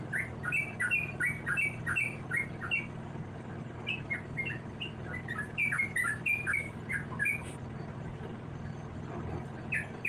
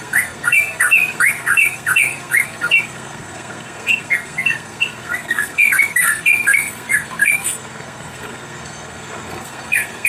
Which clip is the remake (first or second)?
second